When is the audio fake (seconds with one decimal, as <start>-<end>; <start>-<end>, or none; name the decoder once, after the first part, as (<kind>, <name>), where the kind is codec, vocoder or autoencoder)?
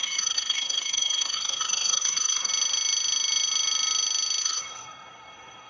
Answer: 0.0-2.5 (codec, SNAC); 4.4-5.7